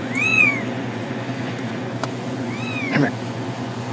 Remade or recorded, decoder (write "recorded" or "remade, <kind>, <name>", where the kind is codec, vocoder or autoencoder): remade, vocoder, Vocos